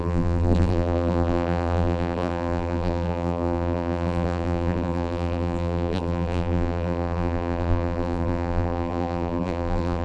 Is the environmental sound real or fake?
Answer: fake